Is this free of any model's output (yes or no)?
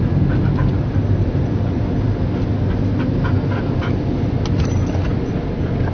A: yes